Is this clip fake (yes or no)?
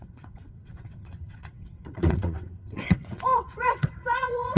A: yes